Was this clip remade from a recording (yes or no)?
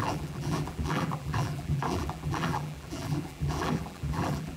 yes